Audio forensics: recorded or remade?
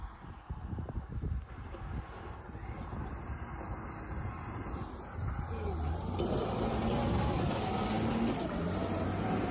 recorded